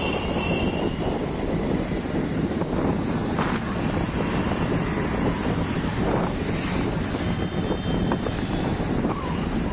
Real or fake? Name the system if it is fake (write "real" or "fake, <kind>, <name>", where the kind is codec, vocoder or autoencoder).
real